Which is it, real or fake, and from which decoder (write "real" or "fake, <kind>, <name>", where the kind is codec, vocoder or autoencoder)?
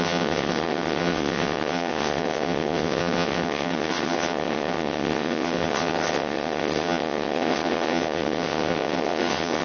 fake, vocoder, WaveNeXt